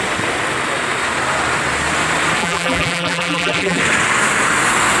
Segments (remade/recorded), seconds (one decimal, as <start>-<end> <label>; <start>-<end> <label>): 0.0-2.4 recorded; 2.4-3.8 remade; 3.8-5.0 recorded